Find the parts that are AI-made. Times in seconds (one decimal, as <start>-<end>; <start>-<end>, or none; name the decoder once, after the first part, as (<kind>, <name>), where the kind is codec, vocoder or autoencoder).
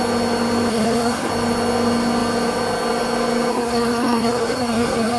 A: 0.7-1.3 (codec, SNAC); 3.5-5.2